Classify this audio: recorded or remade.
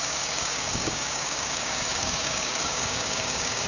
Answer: remade